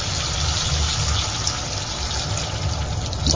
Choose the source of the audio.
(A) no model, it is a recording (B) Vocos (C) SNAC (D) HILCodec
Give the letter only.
A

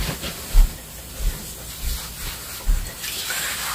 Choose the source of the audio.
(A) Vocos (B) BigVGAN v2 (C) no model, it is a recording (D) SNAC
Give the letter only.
C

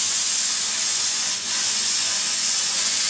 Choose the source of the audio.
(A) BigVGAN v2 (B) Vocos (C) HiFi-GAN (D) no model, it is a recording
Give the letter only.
B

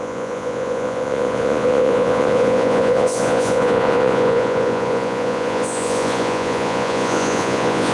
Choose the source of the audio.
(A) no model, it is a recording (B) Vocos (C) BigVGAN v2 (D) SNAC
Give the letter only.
B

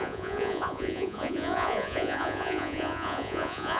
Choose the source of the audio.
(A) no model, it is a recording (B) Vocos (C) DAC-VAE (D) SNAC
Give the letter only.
B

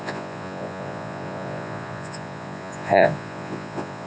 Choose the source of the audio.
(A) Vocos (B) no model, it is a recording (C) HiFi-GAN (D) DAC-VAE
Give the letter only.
A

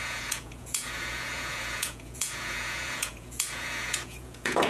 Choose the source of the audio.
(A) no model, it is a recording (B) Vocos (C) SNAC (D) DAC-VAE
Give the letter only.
B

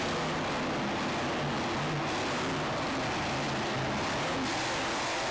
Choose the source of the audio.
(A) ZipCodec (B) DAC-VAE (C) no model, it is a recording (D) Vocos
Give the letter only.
C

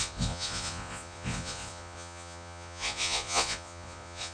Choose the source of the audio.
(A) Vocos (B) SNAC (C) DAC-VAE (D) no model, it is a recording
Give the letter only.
A